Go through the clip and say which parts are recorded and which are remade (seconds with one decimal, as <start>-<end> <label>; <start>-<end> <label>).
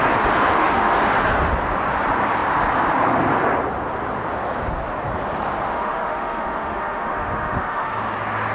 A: 0.0-0.4 recorded; 0.4-1.1 remade; 1.1-5.7 recorded; 5.7-8.0 remade; 8.0-8.5 recorded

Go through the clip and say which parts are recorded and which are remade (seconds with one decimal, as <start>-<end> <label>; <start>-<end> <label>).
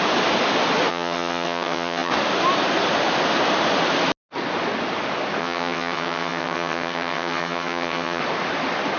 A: 0.0-0.9 recorded; 0.9-2.1 remade; 2.1-5.4 recorded; 5.4-8.2 remade; 8.2-9.0 recorded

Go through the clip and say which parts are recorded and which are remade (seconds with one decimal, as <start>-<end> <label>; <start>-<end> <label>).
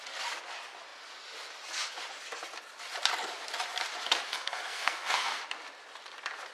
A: 0.0-4.3 recorded; 4.3-5.4 remade; 5.4-6.5 recorded